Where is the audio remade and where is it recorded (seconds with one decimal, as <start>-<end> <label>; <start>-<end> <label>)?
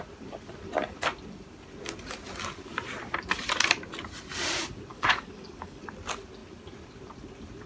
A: 0.0-4.9 recorded; 4.9-5.8 remade; 5.8-7.7 recorded